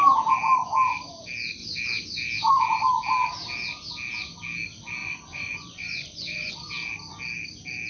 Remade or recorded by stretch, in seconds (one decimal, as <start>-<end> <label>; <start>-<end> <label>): 0.0-5.0 recorded; 5.0-6.5 remade; 6.5-7.9 recorded